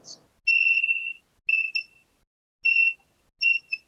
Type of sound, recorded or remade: recorded